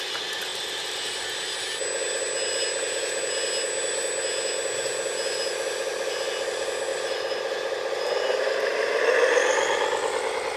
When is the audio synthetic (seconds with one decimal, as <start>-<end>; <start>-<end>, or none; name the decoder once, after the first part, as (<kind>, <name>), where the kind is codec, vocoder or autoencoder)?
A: 6.9-9.0 (vocoder, BigVGAN v2)